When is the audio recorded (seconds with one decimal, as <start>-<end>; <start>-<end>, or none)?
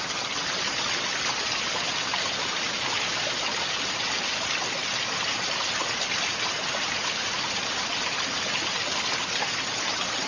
0.0-10.3